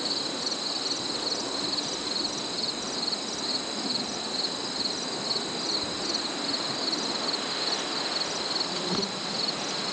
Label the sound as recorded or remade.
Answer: recorded